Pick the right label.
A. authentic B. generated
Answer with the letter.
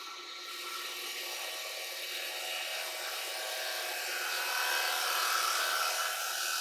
A